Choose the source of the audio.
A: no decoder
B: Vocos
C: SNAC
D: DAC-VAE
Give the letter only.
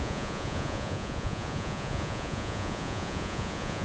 B